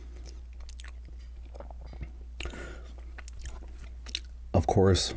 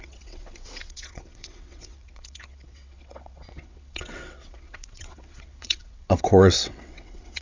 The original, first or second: first